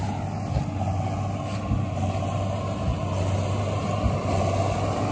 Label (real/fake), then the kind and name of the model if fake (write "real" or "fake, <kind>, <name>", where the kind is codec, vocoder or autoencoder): real